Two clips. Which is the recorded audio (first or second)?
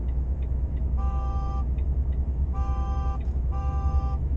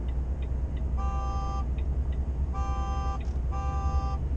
second